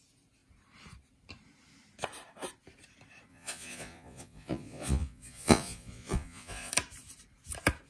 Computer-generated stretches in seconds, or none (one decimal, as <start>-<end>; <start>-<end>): 3.3-6.7